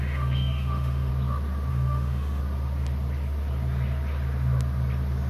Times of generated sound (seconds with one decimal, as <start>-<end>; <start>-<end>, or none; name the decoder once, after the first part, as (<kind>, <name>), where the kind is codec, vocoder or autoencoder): 0.0-1.1 (autoencoder, DAC-VAE); 1.7-2.4